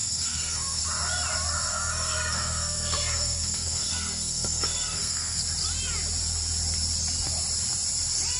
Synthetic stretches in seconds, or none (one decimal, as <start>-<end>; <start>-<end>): 0.0-0.8; 1.7-5.4